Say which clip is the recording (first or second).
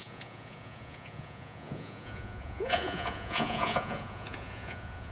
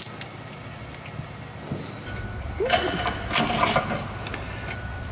second